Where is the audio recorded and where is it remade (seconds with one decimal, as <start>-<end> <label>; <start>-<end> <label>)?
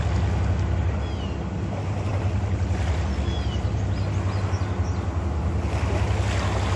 0.0-6.8 recorded